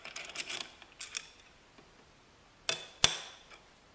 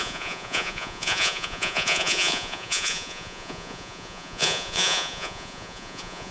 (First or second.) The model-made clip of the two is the second